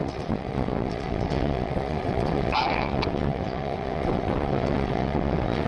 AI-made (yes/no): yes